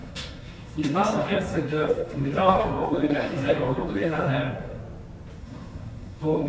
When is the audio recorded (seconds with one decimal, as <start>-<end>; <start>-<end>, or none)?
4.8-5.4

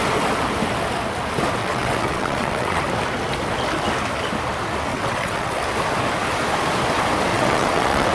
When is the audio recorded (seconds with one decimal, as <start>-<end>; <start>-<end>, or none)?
0.0-1.6; 2.8-4.9; 5.6-7.3

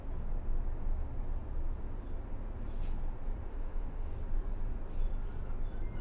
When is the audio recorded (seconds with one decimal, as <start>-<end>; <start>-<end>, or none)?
0.0-3.5; 4.1-6.0